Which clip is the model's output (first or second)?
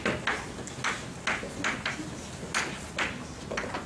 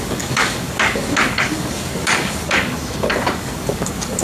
second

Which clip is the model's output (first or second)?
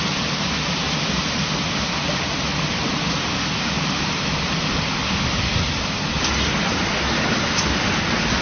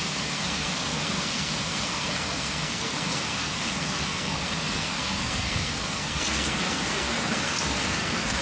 second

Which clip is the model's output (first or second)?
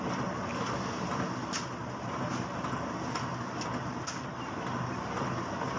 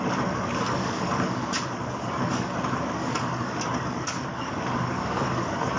second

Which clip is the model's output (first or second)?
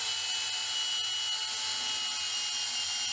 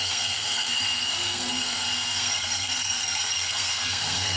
second